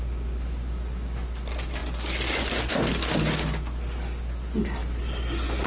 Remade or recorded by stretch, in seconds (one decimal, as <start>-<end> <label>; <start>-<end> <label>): 0.0-5.7 recorded